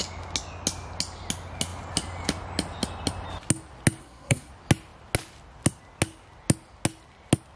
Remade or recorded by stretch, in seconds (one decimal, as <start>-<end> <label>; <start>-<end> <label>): 0.0-4.0 recorded; 4.0-4.5 remade; 4.5-7.6 recorded